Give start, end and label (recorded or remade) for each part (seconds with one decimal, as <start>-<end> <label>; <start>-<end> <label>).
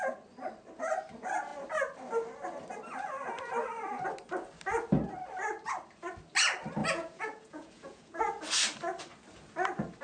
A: 0.0-6.8 recorded; 6.8-8.2 remade; 8.2-10.0 recorded